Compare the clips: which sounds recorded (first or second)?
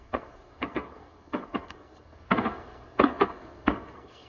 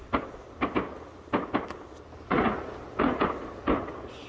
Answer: second